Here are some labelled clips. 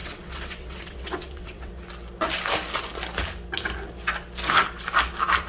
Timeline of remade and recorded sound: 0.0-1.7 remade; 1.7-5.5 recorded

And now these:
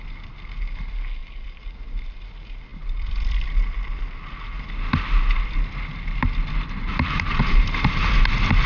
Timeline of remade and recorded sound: 0.0-1.2 recorded; 1.2-1.8 remade; 1.8-6.9 recorded; 6.9-8.1 remade; 8.1-8.7 recorded